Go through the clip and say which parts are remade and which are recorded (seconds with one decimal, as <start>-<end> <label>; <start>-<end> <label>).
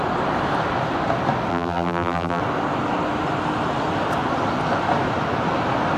0.0-1.5 recorded; 1.5-2.4 remade; 2.4-6.0 recorded